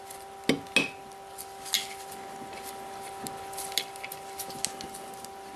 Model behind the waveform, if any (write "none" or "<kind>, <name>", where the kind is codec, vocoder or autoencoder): none